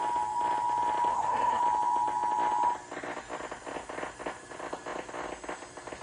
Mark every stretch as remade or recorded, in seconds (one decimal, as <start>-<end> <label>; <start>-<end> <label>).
0.0-1.1 recorded; 1.1-1.6 remade; 1.6-6.0 recorded